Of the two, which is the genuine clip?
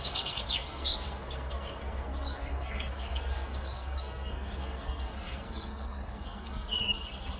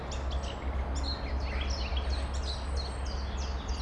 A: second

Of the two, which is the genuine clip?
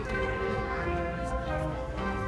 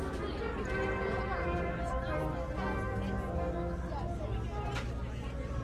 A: second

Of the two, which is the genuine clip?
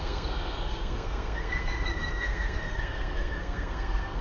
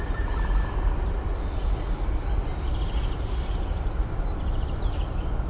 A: second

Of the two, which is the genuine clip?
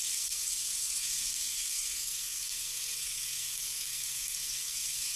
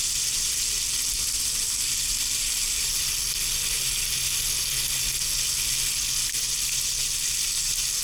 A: second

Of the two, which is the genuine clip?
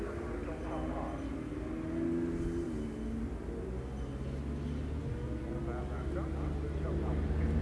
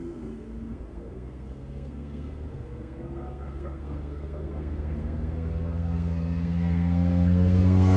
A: first